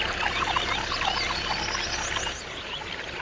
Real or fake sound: real